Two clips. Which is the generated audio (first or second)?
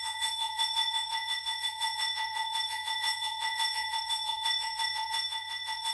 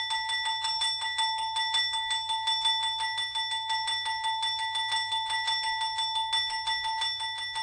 first